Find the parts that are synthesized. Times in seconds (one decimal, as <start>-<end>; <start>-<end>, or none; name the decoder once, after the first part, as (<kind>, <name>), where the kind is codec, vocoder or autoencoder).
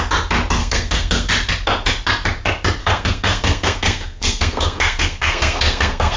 0.6-1.3 (codec, SNAC); 2.8-6.2